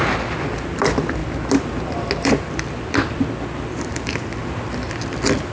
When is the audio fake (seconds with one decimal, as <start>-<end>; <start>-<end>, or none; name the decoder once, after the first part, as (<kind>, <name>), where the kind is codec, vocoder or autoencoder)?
none